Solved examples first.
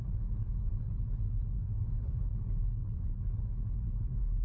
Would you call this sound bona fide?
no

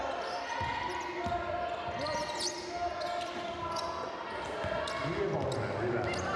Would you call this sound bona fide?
yes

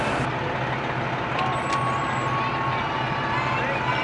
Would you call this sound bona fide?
yes